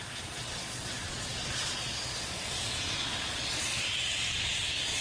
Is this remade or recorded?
remade